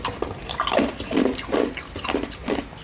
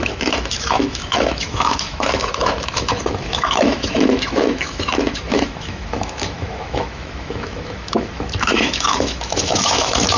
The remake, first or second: second